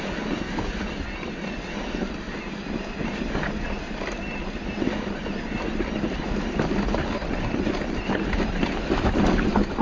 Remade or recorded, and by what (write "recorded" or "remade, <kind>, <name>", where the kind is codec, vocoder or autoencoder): recorded